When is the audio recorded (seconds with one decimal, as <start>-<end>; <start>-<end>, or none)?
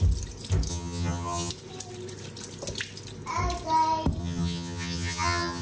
0.0-0.7; 1.5-4.2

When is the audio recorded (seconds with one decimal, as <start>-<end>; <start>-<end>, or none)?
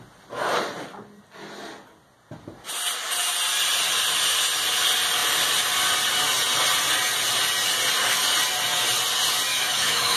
0.0-9.5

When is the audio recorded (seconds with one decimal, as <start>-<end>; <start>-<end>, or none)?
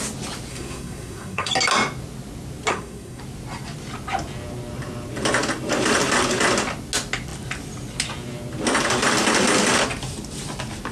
0.0-0.5; 1.5-2.7; 3.2-10.9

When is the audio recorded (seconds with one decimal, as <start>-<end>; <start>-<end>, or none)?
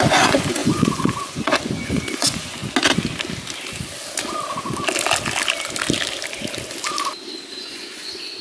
2.6-7.6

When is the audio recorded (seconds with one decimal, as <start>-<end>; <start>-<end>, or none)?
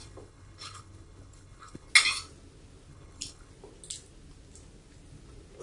1.9-2.9; 3.5-5.6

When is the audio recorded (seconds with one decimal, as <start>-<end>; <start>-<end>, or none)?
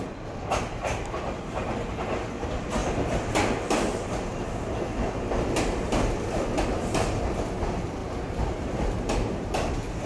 0.0-8.0; 9.7-10.1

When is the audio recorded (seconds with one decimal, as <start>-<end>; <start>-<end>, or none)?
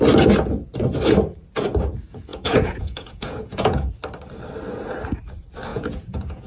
0.0-2.3; 3.9-5.7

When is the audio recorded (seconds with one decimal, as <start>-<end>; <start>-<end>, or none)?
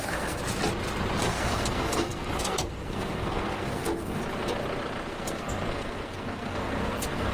0.4-1.2; 4.2-5.1